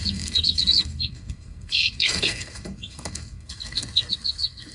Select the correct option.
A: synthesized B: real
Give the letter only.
A